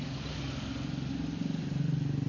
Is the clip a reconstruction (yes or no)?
no